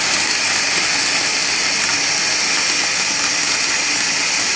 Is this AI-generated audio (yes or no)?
no